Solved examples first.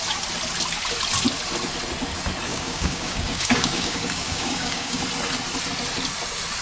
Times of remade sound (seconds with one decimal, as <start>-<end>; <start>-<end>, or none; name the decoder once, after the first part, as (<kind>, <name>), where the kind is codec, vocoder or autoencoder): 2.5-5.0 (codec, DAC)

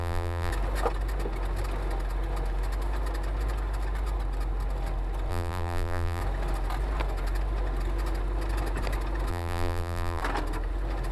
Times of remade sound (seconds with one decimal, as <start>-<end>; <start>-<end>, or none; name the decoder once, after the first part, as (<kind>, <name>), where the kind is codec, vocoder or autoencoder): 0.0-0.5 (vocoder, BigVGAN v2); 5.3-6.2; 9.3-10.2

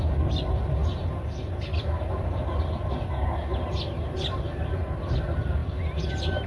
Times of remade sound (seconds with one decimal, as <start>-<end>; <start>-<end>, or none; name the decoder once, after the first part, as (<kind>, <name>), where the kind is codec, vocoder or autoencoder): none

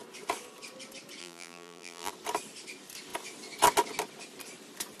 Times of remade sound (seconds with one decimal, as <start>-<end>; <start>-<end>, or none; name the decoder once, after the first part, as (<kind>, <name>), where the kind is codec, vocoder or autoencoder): 1.2-2.1 (vocoder, BigVGAN v2)

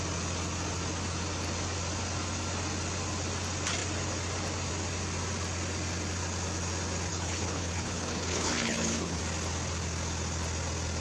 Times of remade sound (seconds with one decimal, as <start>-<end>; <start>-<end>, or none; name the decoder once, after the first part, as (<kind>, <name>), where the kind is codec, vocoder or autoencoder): 7.1-9.2 (codec, HILCodec)